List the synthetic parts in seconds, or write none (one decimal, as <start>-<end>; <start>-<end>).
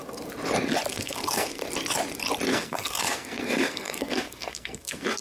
0.9-1.6; 2.5-5.2